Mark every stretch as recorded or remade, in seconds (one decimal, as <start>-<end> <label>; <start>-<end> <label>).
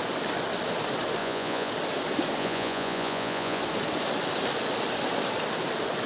0.0-1.2 recorded; 1.2-1.7 remade; 1.7-2.4 recorded; 2.4-3.6 remade; 3.6-6.1 recorded